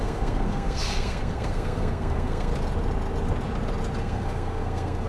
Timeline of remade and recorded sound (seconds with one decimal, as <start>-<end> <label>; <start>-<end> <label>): 0.0-2.5 remade; 2.5-4.0 recorded; 4.0-5.1 remade